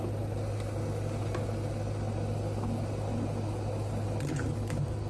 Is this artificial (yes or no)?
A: no